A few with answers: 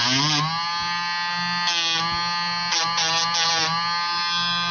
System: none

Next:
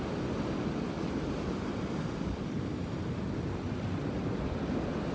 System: none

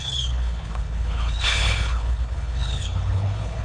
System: codec, HILCodec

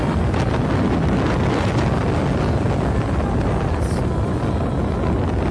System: none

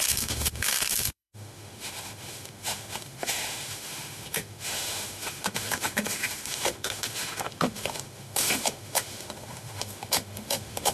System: autoencoder, DAC-VAE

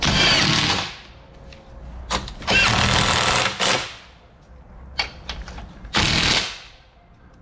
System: none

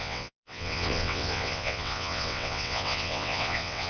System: vocoder, WaveNeXt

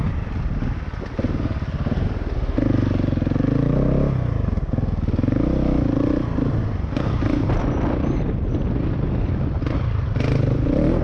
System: none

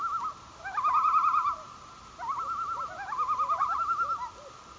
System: none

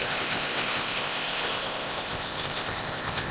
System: codec, ZipCodec